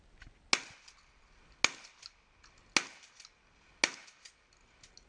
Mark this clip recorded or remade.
recorded